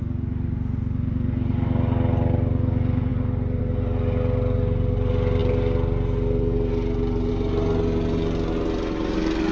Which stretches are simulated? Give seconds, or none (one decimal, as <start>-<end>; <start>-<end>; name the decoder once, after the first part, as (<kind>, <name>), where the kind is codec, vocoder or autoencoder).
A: none